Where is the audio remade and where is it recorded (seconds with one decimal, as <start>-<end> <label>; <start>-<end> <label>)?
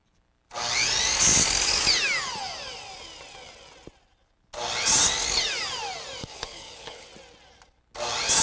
0.0-6.2 recorded; 6.2-7.1 remade; 7.1-8.4 recorded